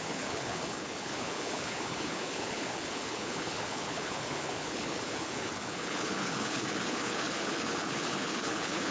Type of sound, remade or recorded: remade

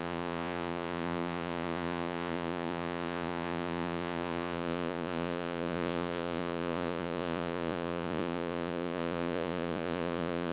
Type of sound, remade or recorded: remade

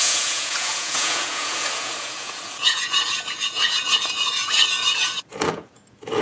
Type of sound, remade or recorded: remade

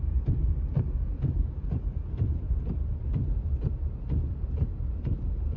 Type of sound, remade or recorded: recorded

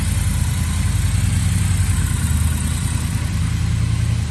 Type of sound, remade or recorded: recorded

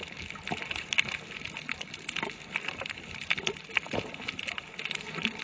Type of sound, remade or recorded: recorded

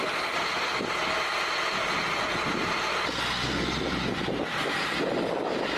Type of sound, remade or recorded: recorded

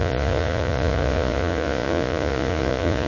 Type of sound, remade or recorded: remade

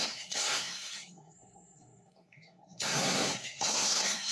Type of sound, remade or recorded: remade